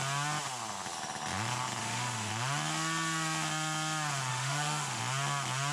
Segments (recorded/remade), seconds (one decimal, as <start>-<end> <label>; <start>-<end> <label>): 0.0-1.8 recorded; 1.8-2.3 remade; 2.3-4.3 recorded; 4.3-5.0 remade; 5.0-5.7 recorded